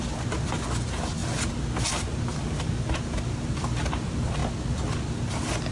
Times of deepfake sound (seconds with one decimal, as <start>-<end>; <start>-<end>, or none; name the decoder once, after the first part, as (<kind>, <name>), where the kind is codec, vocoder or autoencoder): none